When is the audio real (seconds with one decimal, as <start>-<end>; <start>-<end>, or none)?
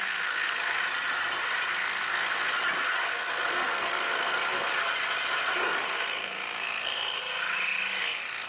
0.8-1.7; 2.5-3.1; 4.7-5.6; 7.2-8.0